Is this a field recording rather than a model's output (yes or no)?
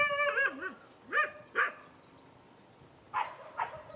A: yes